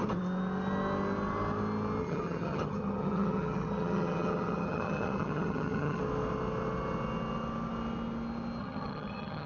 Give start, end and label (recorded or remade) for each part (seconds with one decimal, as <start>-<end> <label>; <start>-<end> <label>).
0.0-2.0 recorded; 2.0-6.0 remade; 6.0-8.6 recorded; 8.6-9.5 remade